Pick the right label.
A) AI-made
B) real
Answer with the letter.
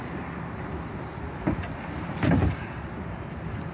B